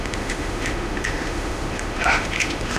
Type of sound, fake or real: fake